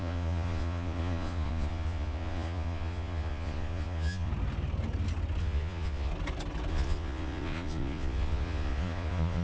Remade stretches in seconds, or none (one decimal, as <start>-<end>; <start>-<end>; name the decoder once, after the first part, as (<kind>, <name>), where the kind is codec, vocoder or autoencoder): 0.0-4.3 (vocoder, Vocos); 5.4-6.1; 6.7-9.4